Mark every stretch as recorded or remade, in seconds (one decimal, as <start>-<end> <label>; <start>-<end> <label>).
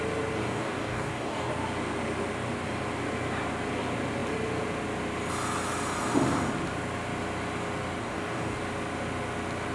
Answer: 0.0-0.4 recorded; 0.4-1.5 remade; 1.5-8.0 recorded; 8.0-8.6 remade; 8.6-9.7 recorded